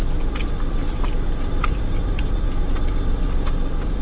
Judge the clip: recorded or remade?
remade